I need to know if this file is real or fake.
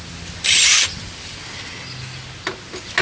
real